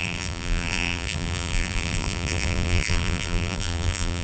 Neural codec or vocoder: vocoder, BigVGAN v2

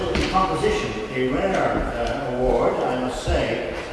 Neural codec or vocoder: none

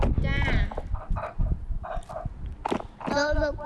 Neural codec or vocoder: none